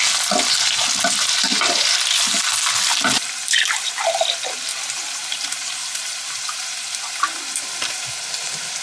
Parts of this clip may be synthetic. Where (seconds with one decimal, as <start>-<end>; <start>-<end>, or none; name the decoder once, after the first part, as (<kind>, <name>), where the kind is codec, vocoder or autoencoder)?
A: 2.9-3.9 (vocoder, BigVGAN v2); 4.7-7.1